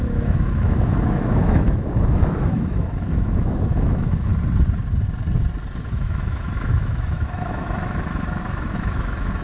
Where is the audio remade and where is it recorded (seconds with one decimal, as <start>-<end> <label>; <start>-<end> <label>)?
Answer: 0.0-4.3 remade; 4.3-5.9 recorded; 5.9-9.4 remade